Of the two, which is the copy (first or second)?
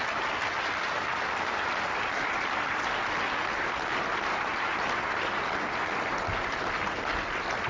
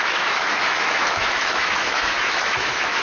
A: second